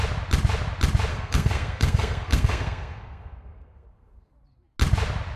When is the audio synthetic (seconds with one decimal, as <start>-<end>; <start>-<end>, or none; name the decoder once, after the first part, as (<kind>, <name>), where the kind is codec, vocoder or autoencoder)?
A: 1.1-4.3 (codec, SNAC)